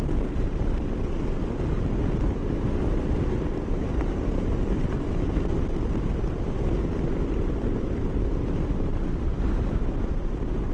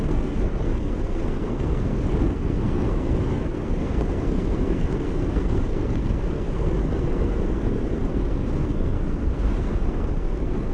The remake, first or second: second